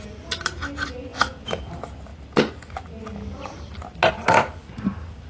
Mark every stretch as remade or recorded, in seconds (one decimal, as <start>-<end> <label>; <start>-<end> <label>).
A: 0.0-1.1 recorded; 1.1-1.7 remade; 1.7-5.3 recorded